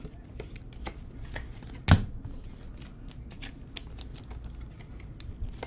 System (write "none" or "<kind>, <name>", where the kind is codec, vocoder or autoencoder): none